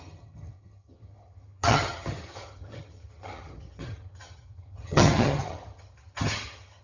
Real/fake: fake